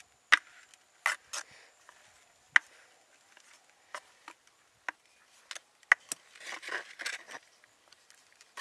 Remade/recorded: recorded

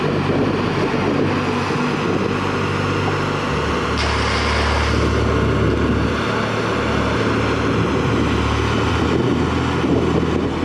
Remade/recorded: recorded